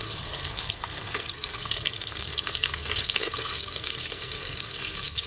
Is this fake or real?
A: fake